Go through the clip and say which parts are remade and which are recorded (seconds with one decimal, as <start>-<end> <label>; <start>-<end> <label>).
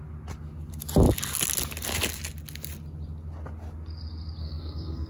0.0-4.4 recorded; 4.4-5.1 remade